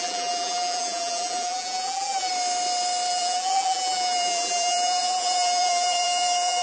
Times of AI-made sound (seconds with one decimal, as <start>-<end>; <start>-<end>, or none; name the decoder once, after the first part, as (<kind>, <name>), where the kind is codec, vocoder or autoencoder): 0.0-2.3 (vocoder, BigVGAN v2); 3.1-6.6

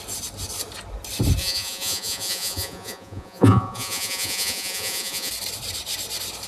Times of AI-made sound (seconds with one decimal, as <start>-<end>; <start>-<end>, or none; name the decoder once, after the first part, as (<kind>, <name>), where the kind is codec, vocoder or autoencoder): 1.4-5.3 (vocoder, Vocos)

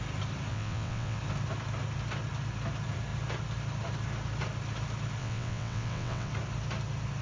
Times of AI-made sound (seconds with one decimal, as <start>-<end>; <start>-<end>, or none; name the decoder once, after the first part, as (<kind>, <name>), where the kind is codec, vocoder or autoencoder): 0.5-1.2 (vocoder, WaveNeXt); 5.2-6.3

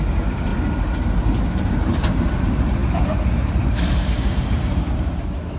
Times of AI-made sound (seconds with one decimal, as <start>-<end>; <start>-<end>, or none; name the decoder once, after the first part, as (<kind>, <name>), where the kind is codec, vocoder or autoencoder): 0.0-0.5 (vocoder, BigVGAN v2); 1.4-5.6

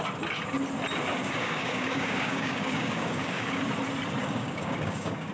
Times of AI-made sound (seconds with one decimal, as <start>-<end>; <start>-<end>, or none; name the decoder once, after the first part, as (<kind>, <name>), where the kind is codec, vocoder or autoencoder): 1.2-3.6 (codec, DAC); 4.2-5.3